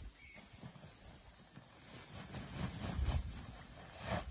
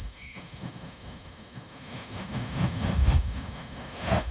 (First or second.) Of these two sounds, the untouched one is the first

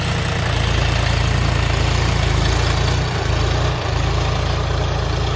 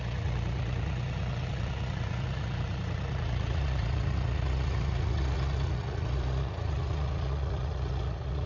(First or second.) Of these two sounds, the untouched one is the first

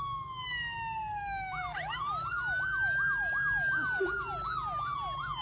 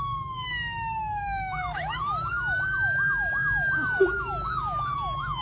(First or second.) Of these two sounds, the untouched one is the first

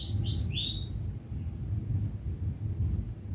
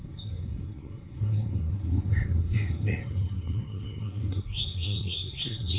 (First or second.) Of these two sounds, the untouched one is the first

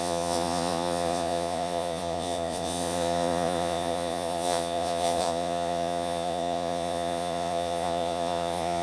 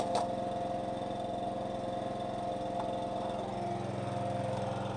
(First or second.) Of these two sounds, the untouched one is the second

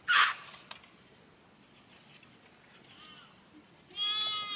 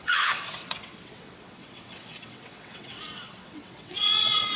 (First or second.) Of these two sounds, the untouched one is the first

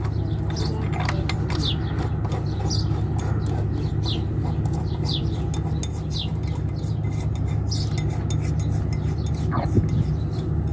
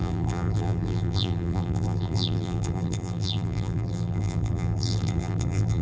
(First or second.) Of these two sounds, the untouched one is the first